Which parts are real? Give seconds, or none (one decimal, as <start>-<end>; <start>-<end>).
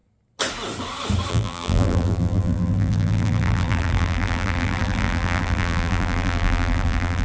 0.0-1.3